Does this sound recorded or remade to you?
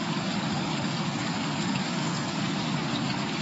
remade